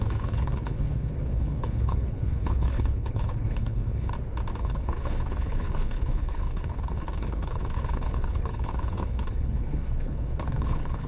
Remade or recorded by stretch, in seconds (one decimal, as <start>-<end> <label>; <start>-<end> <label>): 0.0-4.1 remade; 4.1-4.6 recorded; 4.6-11.1 remade